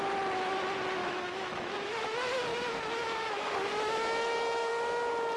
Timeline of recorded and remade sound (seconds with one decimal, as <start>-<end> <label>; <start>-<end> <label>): 0.0-1.0 recorded; 1.0-2.1 remade; 2.1-2.5 recorded; 2.5-4.7 remade; 4.7-5.4 recorded